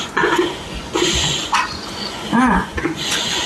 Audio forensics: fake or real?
fake